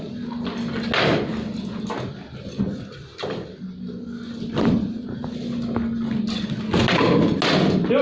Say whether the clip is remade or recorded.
recorded